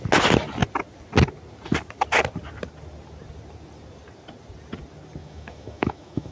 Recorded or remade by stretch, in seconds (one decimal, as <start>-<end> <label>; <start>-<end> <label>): 0.0-5.2 recorded; 5.2-6.3 remade